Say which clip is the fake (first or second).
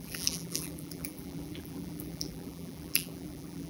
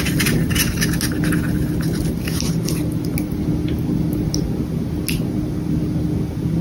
first